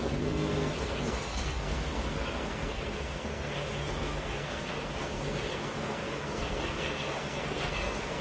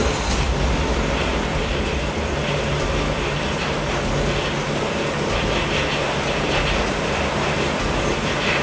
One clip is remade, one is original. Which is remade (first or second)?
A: first